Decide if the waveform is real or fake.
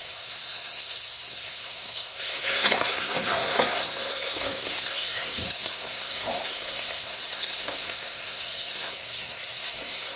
fake